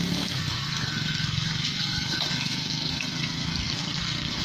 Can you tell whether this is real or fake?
fake